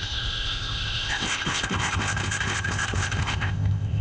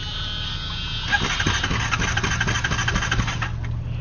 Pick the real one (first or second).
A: second